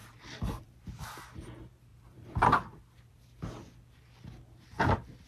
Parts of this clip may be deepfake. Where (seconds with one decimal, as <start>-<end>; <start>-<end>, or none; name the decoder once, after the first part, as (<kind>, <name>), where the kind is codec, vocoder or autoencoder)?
0.0-1.2 (vocoder, BigVGAN v2); 1.9-4.0